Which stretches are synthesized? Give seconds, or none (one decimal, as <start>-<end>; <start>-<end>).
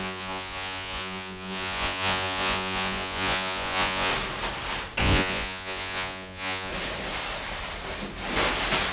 0.0-4.1; 5.0-6.7